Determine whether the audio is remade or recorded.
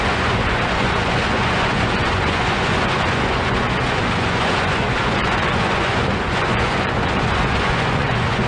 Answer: remade